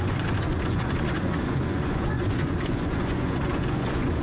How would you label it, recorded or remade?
remade